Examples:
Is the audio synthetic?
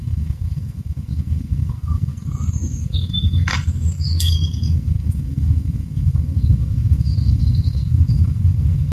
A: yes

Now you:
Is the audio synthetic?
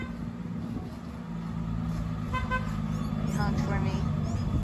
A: no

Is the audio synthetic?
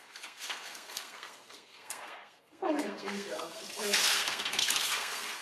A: yes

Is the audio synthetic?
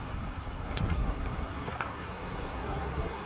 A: yes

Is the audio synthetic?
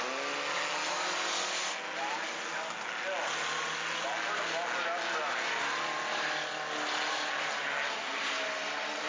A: no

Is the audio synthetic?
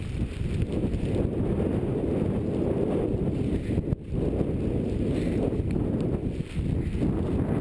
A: no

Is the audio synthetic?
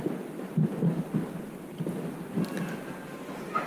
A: no